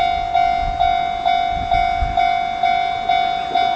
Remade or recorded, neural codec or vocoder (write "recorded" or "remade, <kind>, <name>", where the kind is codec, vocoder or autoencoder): recorded